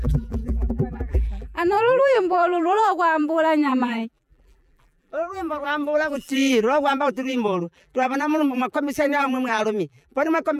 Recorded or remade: remade